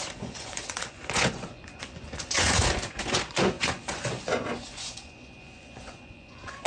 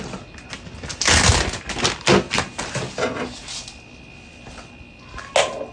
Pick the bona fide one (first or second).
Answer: second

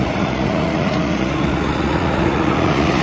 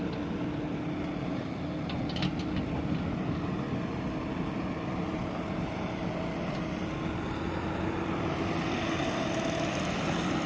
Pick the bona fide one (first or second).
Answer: second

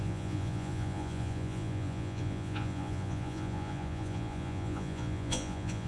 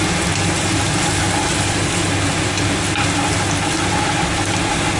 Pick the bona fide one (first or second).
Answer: second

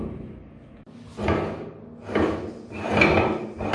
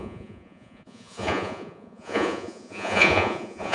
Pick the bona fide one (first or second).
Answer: first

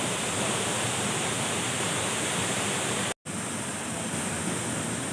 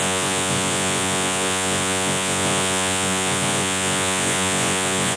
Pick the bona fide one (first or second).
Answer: first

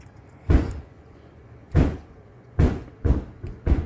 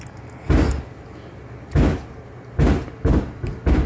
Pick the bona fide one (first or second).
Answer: second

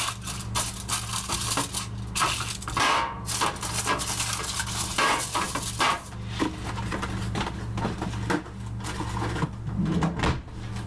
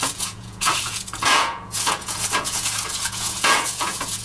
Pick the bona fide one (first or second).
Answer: first